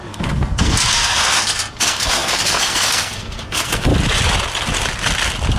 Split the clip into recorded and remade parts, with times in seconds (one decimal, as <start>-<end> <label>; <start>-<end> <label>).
0.0-3.9 remade; 3.9-5.6 recorded